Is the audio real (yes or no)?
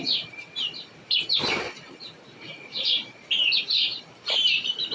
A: no